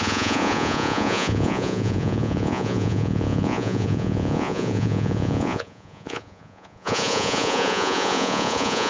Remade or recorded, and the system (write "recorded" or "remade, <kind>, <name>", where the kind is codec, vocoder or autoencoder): remade, vocoder, Vocos